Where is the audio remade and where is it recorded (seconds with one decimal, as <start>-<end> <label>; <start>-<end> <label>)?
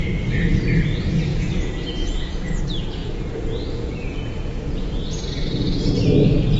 0.0-1.3 recorded; 1.3-2.6 remade; 2.6-3.0 recorded; 3.0-5.8 remade; 5.8-6.6 recorded